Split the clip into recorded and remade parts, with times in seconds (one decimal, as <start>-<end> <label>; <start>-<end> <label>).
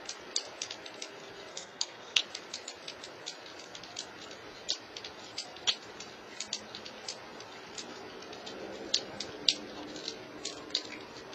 0.0-1.5 recorded; 1.5-2.2 remade; 2.2-11.3 recorded